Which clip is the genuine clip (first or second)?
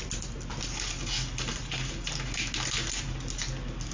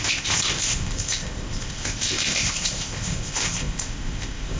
first